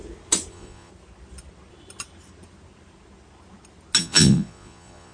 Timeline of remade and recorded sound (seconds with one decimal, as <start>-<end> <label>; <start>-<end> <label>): 0.0-0.5 recorded; 0.5-0.9 remade; 0.9-4.0 recorded; 4.0-5.1 remade